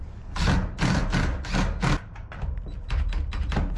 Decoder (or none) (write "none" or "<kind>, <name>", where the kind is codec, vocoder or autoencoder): none